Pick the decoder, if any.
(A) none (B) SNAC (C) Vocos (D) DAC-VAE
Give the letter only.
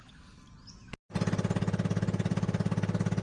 A